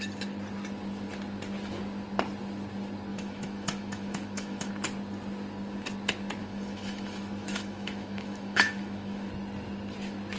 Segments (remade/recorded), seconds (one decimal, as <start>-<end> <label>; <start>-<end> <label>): 0.0-3.1 recorded; 3.1-4.7 remade; 4.7-6.4 recorded; 6.4-9.3 remade; 9.3-10.4 recorded